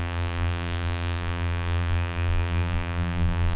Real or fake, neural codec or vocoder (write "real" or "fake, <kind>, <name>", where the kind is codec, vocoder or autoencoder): fake, vocoder, BigVGAN v2